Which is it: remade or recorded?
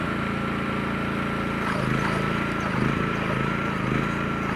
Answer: recorded